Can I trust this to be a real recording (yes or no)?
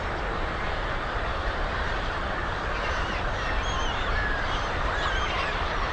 no